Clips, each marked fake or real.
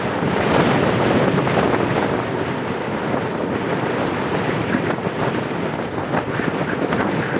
real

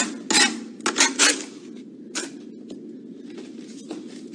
real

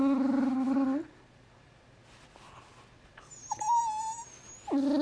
real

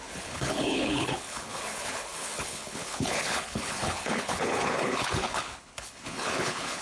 fake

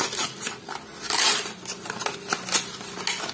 real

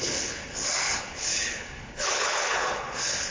fake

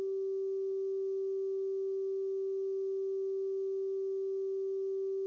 real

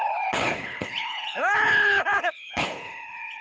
fake